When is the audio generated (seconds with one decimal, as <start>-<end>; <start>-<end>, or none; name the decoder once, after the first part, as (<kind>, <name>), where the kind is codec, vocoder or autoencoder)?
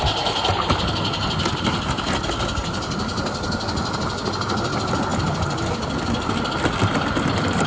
none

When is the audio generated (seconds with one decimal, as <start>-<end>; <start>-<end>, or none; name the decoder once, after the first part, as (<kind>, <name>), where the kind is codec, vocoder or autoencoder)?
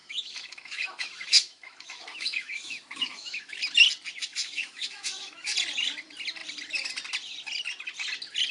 0.0-3.6 (autoencoder, DAC-VAE); 4.3-5.5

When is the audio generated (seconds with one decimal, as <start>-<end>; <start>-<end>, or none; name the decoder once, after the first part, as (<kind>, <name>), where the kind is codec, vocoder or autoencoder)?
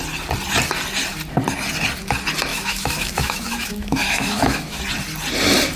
2.5-4.8 (autoencoder, DAC-VAE)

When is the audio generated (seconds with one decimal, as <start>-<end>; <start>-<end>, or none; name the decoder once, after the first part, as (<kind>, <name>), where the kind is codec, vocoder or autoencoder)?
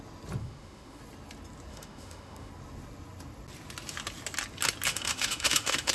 0.4-1.0 (autoencoder, DAC-VAE); 1.7-2.5; 4.9-5.9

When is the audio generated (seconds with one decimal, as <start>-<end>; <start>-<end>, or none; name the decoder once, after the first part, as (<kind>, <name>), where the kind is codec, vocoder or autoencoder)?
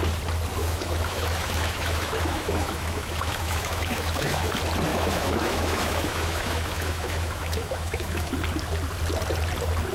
0.6-4.5 (autoencoder, DAC-VAE); 4.9-8.3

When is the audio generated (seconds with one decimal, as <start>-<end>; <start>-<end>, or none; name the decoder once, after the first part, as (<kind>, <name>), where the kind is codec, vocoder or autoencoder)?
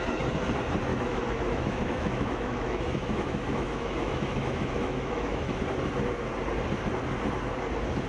0.9-5.6 (autoencoder, DAC-VAE)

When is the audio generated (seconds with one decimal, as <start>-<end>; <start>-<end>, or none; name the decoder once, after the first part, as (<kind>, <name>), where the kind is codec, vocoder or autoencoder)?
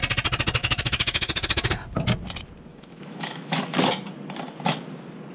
0.6-1.7 (autoencoder, DAC-VAE); 2.7-3.9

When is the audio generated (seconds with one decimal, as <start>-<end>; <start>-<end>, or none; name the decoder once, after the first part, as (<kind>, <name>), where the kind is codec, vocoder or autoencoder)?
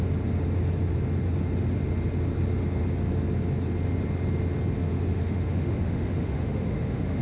4.9-7.2 (autoencoder, DAC-VAE)